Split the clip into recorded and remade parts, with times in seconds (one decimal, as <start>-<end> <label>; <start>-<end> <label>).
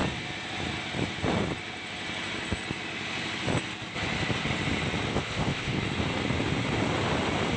0.0-5.1 recorded; 5.1-5.8 remade; 5.8-7.6 recorded